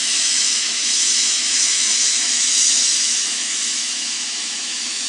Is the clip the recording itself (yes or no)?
no